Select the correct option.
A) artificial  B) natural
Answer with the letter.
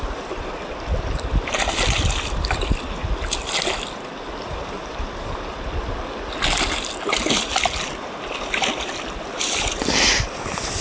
B